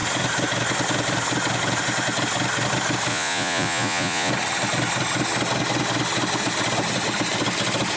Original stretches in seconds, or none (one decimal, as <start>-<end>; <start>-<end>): 0.0-3.1; 4.3-8.0